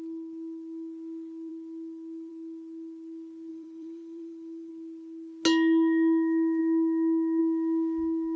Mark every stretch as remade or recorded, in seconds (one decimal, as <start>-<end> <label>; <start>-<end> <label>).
0.0-3.5 recorded; 3.5-4.7 remade; 4.7-8.4 recorded

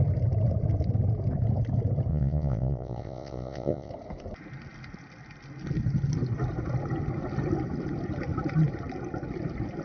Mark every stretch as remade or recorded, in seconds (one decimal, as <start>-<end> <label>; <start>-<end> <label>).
0.0-2.1 recorded; 2.1-3.9 remade; 3.9-9.8 recorded

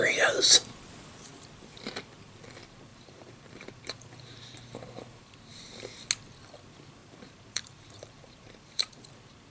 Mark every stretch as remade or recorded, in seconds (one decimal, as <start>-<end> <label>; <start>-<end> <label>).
0.0-2.9 recorded; 2.9-5.2 remade; 5.2-7.0 recorded; 7.0-9.1 remade; 9.1-9.5 recorded

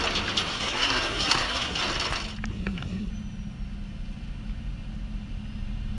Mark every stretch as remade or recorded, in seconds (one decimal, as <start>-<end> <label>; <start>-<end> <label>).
0.0-0.5 recorded; 0.5-1.8 remade; 1.8-2.5 recorded; 2.5-3.1 remade; 3.1-6.0 recorded

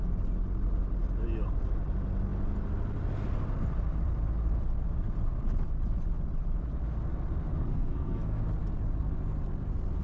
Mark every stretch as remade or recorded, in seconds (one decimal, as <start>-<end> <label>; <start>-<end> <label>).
0.0-7.7 recorded; 7.7-8.4 remade; 8.4-10.0 recorded